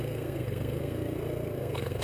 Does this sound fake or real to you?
fake